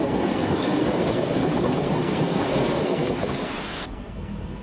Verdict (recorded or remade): remade